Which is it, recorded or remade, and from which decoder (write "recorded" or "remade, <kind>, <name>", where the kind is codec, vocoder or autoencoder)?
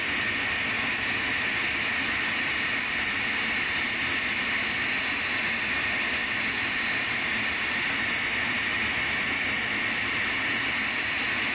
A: recorded